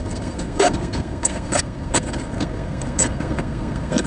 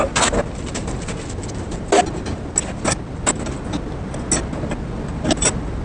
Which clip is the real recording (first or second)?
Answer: second